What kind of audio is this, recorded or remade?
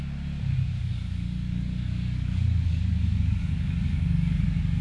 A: remade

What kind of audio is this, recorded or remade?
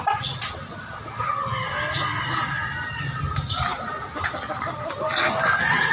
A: recorded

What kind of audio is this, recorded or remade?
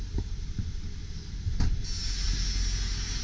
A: recorded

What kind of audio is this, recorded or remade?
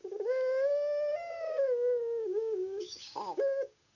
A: remade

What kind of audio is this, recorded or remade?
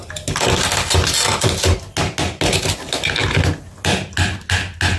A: recorded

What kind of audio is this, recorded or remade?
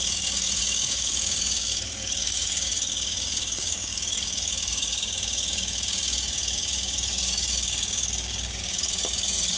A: remade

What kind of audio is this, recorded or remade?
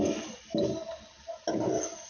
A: recorded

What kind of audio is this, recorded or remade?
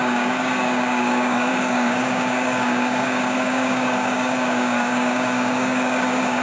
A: remade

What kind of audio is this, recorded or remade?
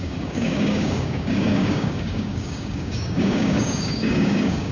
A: remade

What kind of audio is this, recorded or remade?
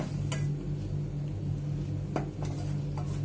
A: recorded